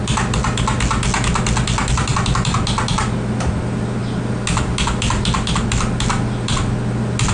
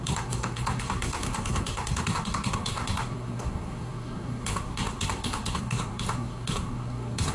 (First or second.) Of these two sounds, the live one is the first